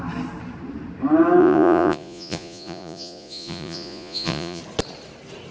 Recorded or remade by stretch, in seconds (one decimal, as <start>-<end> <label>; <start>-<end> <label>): 0.0-1.4 recorded; 1.4-4.6 remade; 4.6-5.5 recorded